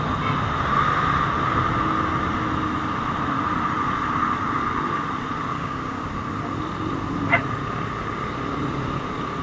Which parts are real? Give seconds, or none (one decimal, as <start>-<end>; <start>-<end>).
0.0-5.5; 6.1-9.4